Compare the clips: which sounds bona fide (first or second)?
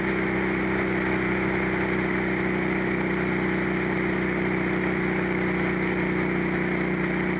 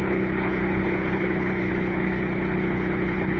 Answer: first